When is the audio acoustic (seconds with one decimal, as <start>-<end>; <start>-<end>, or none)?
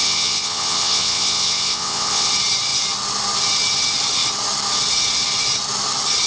2.3-6.3